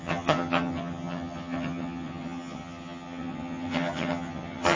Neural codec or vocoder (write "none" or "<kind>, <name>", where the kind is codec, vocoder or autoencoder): vocoder, HiFi-GAN